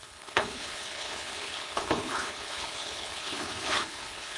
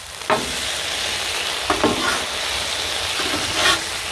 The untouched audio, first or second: second